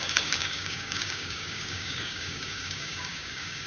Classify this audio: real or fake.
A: fake